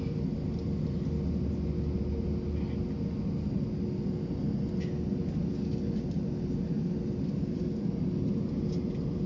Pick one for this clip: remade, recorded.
recorded